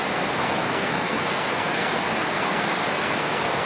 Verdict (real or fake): fake